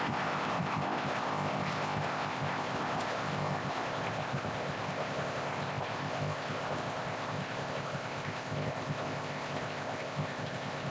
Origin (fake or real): fake